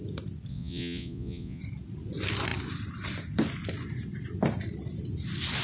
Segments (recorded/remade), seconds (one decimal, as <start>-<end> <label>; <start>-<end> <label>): 0.0-0.5 recorded; 0.5-1.6 remade; 1.6-5.6 recorded